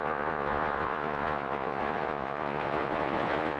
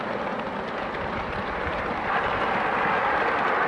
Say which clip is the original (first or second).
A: second